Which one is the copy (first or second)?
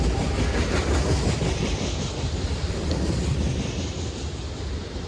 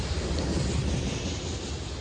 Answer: first